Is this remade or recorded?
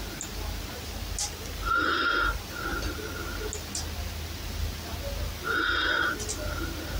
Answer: recorded